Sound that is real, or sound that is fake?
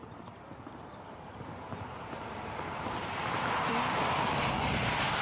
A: fake